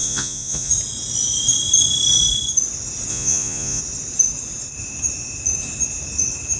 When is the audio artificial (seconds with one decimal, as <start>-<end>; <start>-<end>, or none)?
0.0-0.7; 3.1-3.8